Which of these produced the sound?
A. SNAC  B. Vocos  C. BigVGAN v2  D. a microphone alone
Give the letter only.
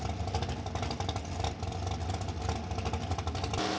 D